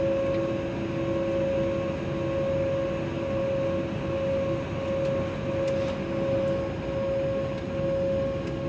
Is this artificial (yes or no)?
no